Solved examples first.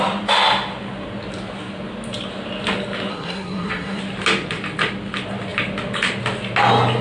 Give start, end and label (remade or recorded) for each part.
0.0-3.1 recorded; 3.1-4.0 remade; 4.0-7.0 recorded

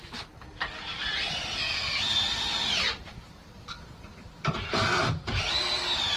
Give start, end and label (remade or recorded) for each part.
0.0-2.1 recorded; 2.1-5.8 remade; 5.8-6.2 recorded

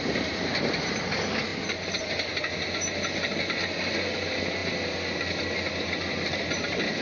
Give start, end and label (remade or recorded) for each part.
0.0-7.0 recorded

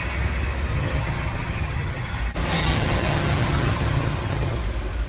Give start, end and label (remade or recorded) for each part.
0.0-0.7 recorded; 0.7-2.2 remade; 2.2-2.6 recorded; 2.6-4.6 remade; 4.6-5.1 recorded

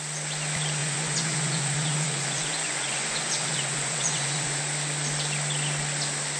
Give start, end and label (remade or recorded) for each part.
0.0-0.8 recorded; 0.8-4.6 remade; 4.6-6.4 recorded

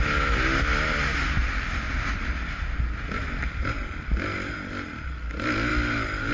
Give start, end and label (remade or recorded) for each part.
0.0-5.7 recorded; 5.7-6.3 remade

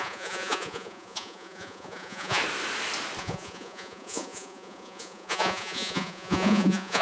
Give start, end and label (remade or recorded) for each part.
0.0-2.4 remade; 2.4-3.2 recorded; 3.2-7.0 remade